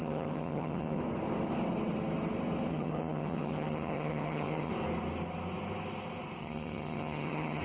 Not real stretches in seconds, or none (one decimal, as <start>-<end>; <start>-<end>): 0.0-1.0; 2.7-4.7; 6.4-7.6